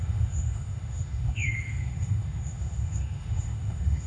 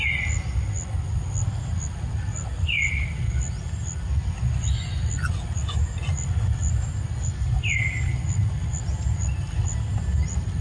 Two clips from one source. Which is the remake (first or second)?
first